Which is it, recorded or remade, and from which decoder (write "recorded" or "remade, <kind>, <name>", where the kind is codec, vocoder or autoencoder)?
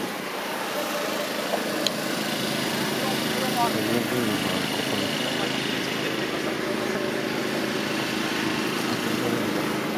recorded